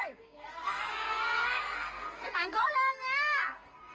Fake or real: fake